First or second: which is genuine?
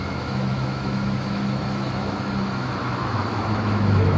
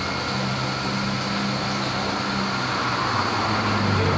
second